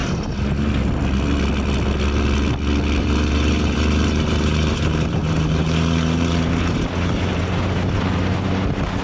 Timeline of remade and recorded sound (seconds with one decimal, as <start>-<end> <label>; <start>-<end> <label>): 0.0-3.0 recorded; 3.0-9.0 remade

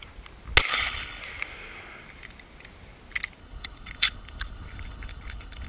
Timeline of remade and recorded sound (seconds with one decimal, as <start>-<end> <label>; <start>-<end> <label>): 0.0-0.7 recorded; 0.7-1.2 remade; 1.2-3.4 recorded; 3.4-5.7 remade

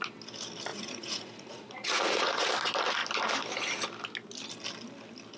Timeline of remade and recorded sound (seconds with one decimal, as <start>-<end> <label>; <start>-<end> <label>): 0.0-0.7 recorded; 0.7-2.5 remade; 2.5-5.4 recorded

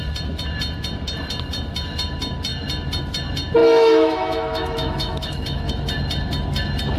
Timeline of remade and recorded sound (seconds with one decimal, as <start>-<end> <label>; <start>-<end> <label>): 0.0-3.6 recorded; 3.6-5.7 remade; 5.7-7.0 recorded

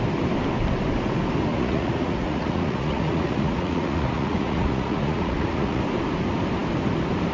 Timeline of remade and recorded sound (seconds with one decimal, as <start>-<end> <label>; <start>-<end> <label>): 0.0-1.5 recorded; 1.5-5.8 remade; 5.8-7.3 recorded

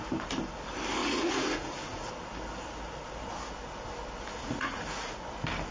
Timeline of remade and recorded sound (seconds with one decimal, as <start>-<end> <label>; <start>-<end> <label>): 0.0-1.0 recorded; 1.0-2.1 remade; 2.1-4.4 recorded; 4.4-5.2 remade; 5.2-5.7 recorded